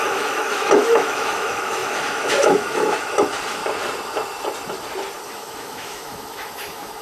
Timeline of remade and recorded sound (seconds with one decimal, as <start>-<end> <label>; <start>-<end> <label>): 0.0-3.6 remade; 3.6-5.2 recorded; 5.2-7.0 remade